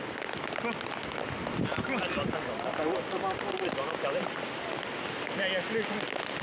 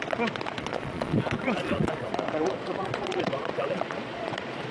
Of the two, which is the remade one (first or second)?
second